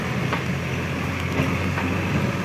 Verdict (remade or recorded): recorded